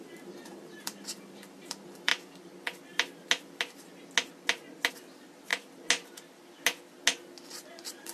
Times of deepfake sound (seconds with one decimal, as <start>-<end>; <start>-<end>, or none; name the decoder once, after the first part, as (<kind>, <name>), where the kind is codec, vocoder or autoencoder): 0.0-2.1 (vocoder, BigVGAN v2); 4.9-5.5; 7.4-8.1